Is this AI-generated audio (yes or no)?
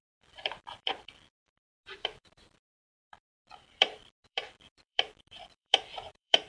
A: yes